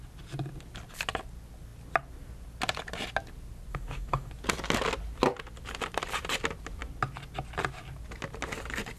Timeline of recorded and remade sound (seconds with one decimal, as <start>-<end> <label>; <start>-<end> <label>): 0.0-3.7 recorded; 3.7-4.3 remade; 4.3-9.0 recorded